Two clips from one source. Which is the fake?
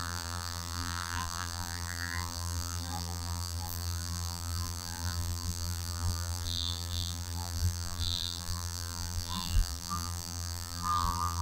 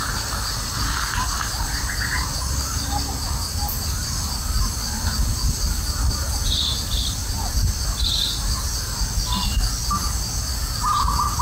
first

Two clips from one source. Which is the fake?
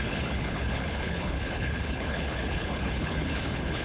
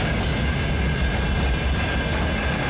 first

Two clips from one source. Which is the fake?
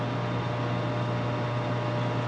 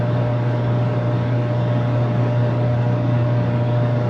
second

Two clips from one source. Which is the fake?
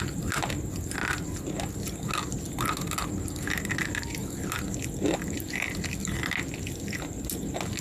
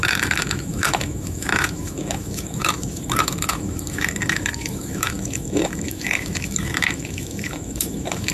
second